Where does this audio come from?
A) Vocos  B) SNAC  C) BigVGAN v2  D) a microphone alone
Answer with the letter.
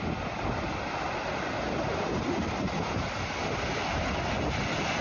D